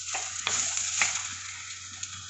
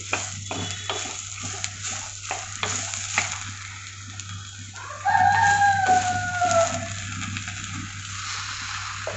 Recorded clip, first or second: second